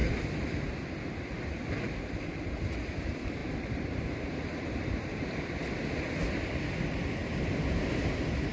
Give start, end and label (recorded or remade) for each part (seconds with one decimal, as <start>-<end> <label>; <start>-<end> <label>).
0.0-0.6 remade; 0.6-3.4 recorded; 3.4-5.4 remade; 5.4-8.5 recorded